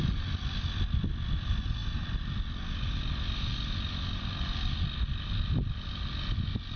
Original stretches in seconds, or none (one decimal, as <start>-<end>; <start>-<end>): 0.0-6.8